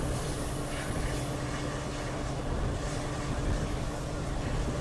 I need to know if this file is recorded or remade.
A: recorded